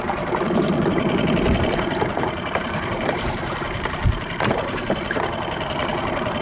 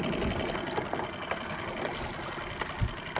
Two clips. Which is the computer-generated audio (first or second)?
first